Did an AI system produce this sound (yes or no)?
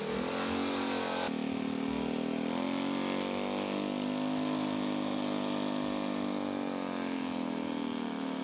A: no